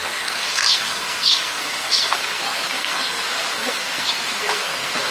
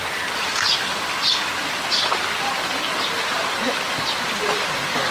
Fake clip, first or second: first